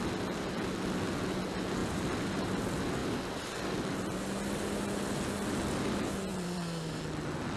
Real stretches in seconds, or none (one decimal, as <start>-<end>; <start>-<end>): 0.0-1.8; 2.6-3.0; 3.6-6.3; 7.0-7.6